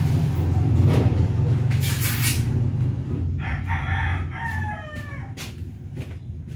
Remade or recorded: recorded